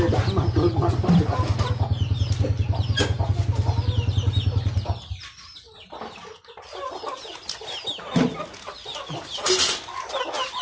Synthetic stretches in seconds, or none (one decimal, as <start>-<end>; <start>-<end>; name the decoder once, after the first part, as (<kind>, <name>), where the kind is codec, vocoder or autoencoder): none